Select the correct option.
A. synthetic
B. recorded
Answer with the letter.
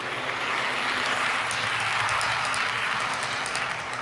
B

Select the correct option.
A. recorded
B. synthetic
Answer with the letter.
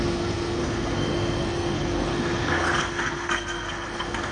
B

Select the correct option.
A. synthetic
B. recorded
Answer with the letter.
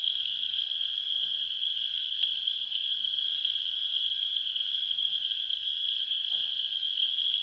A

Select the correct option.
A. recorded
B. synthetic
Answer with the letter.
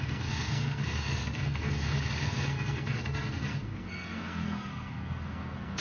B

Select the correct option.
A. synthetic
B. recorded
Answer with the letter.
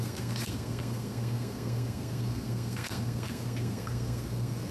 A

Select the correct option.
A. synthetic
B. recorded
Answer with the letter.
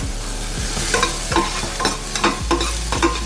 B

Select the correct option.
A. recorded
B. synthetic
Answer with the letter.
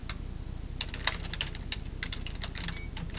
A